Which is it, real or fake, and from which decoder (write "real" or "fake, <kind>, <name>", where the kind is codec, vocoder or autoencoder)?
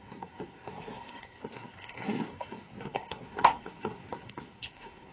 fake, codec, SNAC